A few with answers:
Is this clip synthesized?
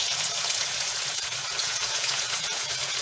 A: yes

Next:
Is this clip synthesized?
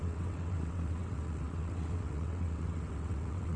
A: yes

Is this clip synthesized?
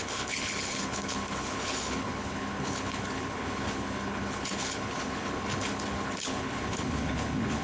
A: yes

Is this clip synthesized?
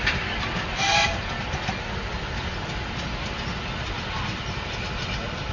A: no